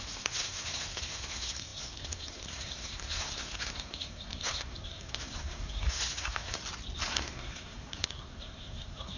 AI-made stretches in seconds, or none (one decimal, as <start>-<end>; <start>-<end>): 0.0-6.6; 7.1-9.2